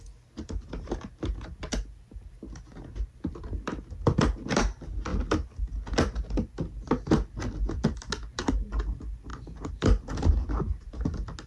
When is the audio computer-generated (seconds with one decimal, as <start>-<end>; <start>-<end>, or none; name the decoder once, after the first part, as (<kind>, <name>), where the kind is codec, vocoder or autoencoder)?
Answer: none

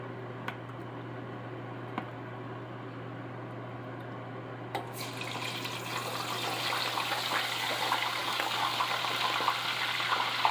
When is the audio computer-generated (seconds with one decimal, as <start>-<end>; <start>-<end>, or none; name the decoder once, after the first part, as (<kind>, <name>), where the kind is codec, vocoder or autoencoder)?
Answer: 8.2-8.8 (codec, DAC)

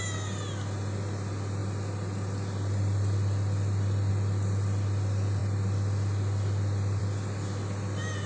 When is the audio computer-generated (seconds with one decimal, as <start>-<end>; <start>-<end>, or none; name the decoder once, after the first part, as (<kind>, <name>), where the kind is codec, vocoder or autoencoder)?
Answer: none